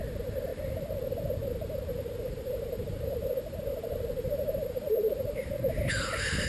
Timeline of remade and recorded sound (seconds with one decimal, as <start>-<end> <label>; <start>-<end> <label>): 0.0-1.9 recorded; 1.9-5.8 remade; 5.8-6.5 recorded